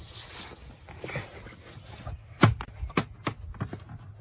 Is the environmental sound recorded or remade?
recorded